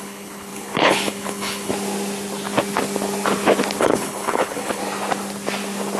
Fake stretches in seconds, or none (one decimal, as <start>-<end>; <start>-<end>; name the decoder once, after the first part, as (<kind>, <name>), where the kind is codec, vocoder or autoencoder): 0.0-1.7 (codec, HILCodec); 3.8-4.8